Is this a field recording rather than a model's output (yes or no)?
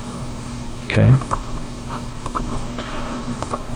no